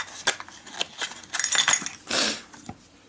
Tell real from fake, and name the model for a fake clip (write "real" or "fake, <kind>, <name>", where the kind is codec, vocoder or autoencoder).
real